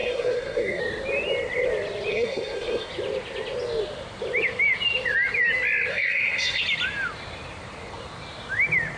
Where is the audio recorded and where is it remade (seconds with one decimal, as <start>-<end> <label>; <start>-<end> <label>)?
0.0-0.8 remade; 0.8-2.1 recorded; 2.1-2.9 remade; 2.9-5.9 recorded; 5.9-6.6 remade; 6.6-9.0 recorded